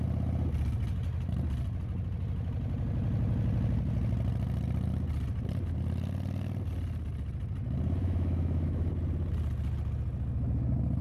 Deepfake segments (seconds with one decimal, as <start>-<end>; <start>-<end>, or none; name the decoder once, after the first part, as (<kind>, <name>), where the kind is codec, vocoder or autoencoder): 8.0-8.9 (autoencoder, DAC-VAE)